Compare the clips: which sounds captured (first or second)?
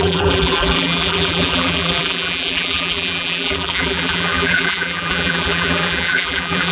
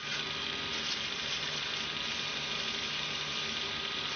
second